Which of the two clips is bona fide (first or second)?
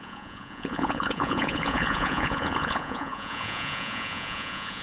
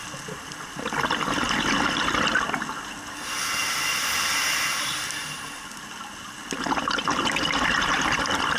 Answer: second